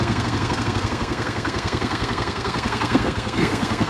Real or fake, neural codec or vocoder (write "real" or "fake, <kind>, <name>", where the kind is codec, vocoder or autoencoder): fake, codec, SNAC